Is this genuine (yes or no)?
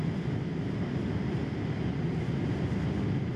yes